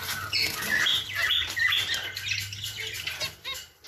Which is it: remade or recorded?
recorded